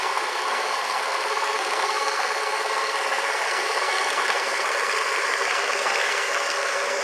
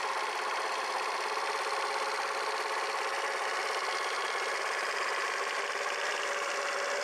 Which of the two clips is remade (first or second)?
first